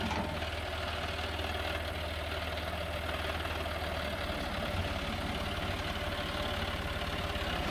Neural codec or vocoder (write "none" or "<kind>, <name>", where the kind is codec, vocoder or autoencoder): none